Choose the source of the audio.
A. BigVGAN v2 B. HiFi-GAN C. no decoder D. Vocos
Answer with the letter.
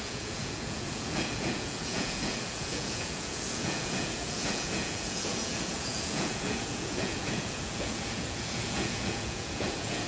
D